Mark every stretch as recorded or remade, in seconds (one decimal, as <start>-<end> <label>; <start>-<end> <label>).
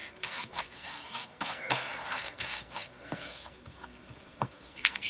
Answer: 0.0-5.1 remade